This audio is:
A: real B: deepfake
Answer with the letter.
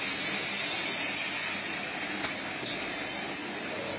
A